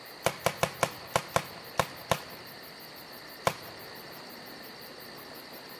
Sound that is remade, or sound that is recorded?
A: recorded